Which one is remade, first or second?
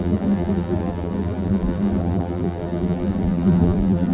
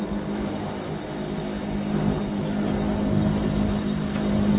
first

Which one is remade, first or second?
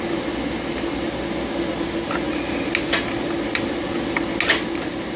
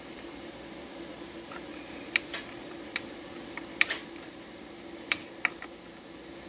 second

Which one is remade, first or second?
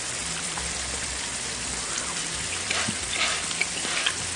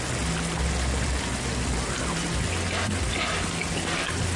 first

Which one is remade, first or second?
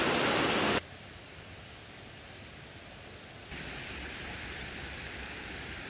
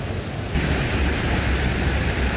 first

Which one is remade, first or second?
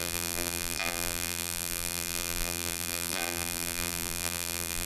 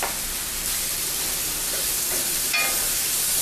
first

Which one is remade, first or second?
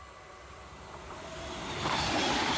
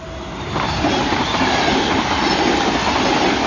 first